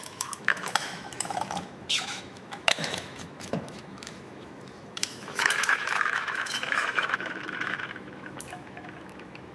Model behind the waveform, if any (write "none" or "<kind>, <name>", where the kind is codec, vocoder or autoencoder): autoencoder, DAC-VAE